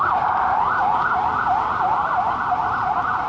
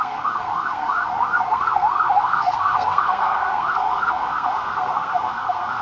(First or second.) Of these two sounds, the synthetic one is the second